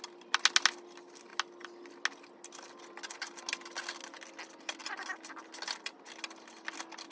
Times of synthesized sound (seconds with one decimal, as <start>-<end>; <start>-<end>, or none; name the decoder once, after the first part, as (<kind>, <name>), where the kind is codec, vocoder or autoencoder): none